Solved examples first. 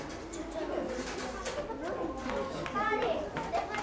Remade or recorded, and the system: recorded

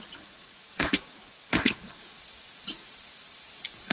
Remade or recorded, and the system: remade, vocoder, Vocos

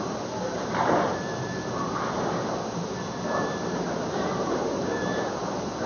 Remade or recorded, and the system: recorded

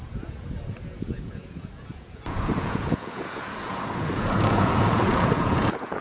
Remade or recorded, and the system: remade, vocoder, Vocos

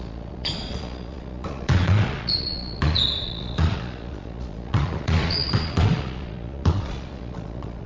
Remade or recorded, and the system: remade, vocoder, Vocos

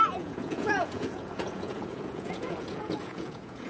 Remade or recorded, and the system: remade, vocoder, Vocos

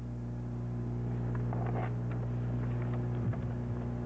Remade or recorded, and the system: recorded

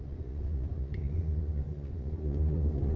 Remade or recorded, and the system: remade, vocoder, Vocos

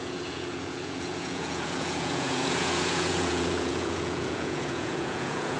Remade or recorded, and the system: remade, vocoder, Vocos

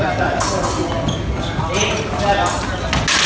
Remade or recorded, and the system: recorded